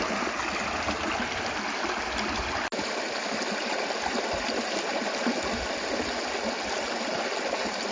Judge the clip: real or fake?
real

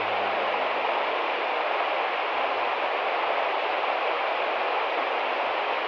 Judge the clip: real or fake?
real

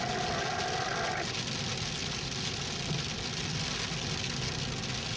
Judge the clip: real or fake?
real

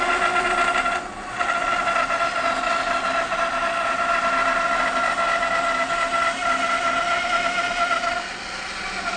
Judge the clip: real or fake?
real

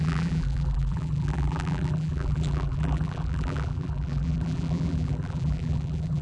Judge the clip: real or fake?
fake